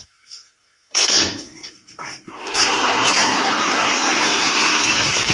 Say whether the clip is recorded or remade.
remade